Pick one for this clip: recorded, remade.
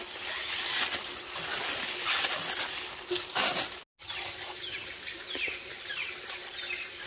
recorded